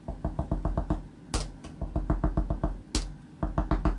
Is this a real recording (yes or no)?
yes